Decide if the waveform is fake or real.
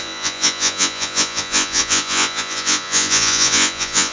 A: fake